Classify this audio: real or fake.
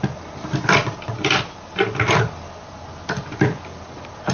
real